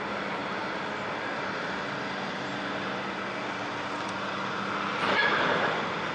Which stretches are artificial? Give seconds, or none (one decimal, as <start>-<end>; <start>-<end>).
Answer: none